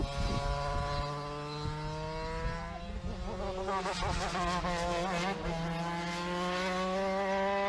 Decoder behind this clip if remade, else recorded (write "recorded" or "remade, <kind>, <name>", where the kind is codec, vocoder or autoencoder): recorded